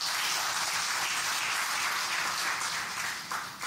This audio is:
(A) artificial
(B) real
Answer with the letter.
B